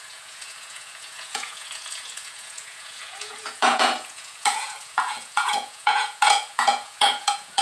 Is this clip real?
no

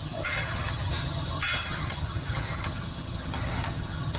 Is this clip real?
no